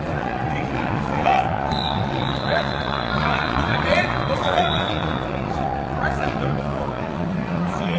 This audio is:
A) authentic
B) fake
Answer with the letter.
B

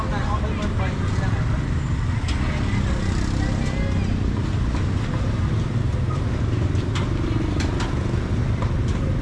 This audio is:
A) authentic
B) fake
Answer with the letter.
A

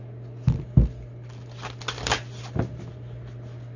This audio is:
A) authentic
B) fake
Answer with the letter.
A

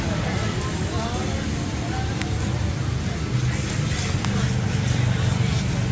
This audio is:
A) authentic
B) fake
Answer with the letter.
A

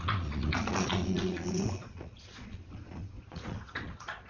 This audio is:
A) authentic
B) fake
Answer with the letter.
B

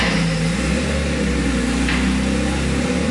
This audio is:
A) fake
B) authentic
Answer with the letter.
B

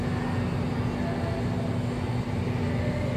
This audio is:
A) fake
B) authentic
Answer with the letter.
B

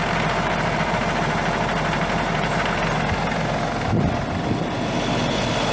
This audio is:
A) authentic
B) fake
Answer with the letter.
A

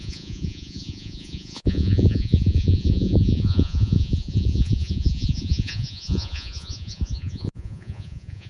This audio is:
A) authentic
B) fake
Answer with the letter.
B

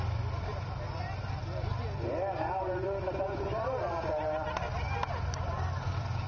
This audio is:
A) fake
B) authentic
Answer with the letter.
B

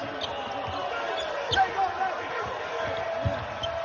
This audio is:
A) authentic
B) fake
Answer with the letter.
A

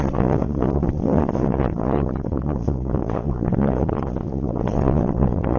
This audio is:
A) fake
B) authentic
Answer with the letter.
A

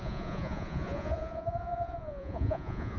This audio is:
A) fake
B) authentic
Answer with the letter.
A